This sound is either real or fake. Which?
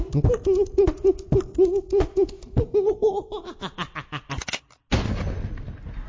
real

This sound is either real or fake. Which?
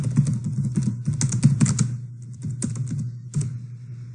real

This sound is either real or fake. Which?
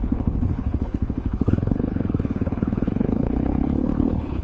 fake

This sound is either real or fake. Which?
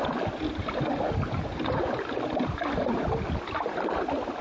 real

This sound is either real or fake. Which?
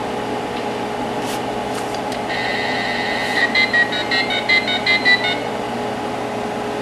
real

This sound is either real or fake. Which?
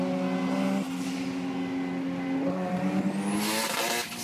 real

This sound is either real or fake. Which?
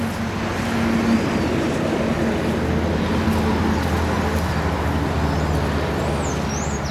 real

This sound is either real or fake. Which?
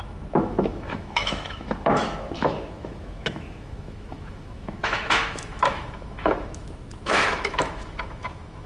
fake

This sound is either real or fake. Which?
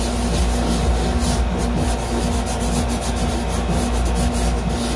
real